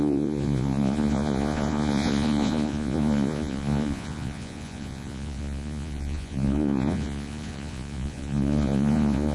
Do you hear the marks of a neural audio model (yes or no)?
yes